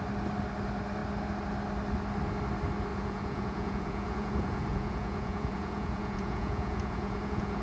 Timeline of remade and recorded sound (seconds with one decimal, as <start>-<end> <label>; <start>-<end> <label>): 0.0-2.9 recorded; 2.9-7.6 remade